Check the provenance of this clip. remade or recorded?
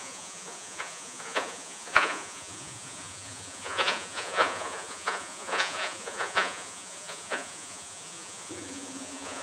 remade